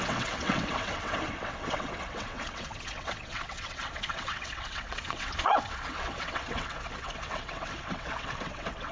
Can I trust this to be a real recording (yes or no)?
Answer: no